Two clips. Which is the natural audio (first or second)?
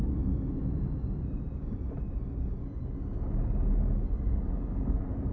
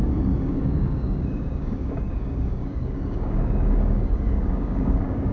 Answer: first